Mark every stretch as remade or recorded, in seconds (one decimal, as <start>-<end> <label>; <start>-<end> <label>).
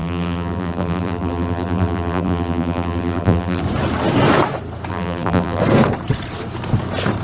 0.0-3.6 remade; 3.6-4.9 recorded; 4.9-5.6 remade; 5.6-7.2 recorded